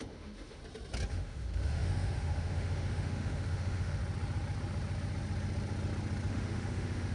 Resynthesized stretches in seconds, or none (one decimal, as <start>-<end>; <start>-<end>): 0.0-0.6; 1.1-4.0; 6.3-7.1